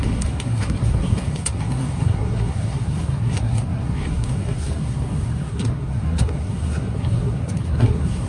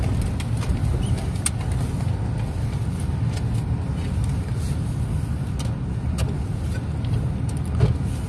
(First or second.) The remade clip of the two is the first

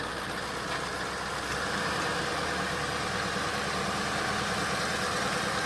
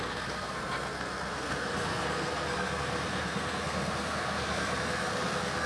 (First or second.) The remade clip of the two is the second